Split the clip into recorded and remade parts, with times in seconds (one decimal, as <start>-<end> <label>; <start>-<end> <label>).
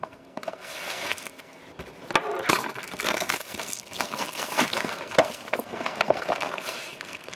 0.0-1.6 remade; 1.6-2.5 recorded; 2.5-7.4 remade